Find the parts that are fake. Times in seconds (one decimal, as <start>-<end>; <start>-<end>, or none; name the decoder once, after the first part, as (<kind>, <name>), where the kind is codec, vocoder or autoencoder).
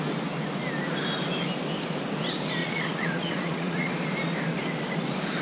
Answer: 2.6-3.9 (vocoder, Vocos)